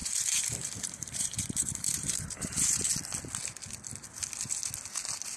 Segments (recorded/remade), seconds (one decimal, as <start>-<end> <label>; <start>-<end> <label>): 0.0-2.9 remade; 2.9-5.4 recorded